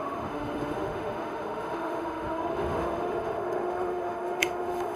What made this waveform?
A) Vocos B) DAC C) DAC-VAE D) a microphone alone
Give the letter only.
C